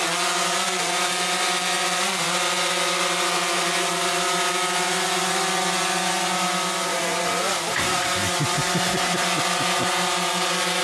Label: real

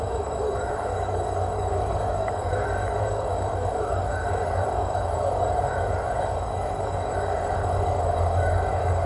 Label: fake